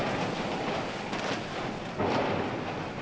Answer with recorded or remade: recorded